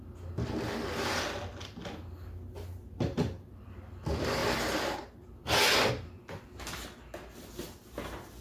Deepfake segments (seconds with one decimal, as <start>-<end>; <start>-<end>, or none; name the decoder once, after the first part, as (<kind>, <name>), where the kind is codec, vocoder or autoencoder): none